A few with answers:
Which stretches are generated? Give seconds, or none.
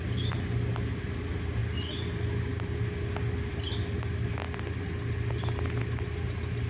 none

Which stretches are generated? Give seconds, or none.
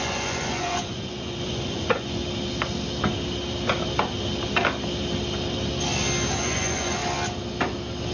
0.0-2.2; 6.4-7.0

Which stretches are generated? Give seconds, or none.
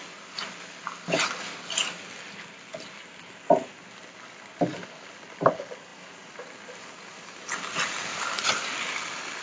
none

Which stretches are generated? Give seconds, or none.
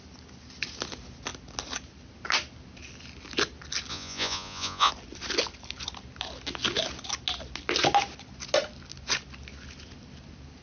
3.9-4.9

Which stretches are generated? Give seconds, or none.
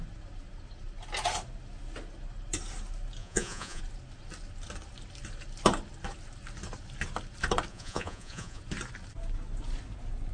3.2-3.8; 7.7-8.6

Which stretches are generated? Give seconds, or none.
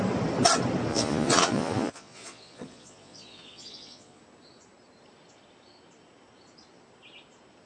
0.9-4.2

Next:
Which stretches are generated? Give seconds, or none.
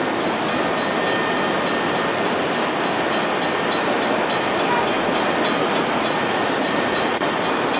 5.6-7.3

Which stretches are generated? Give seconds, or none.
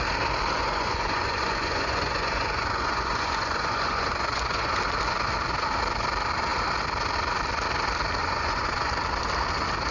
0.6-4.8; 8.2-8.9